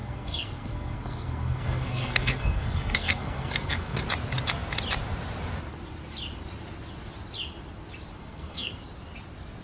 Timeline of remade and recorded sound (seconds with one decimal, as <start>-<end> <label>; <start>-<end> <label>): 0.0-4.0 remade; 4.0-8.2 recorded; 8.2-8.8 remade; 8.8-9.6 recorded